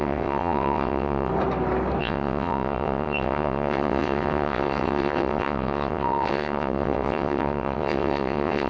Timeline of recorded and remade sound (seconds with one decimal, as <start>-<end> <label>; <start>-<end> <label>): 0.0-1.3 remade; 1.3-2.0 recorded; 2.0-8.7 remade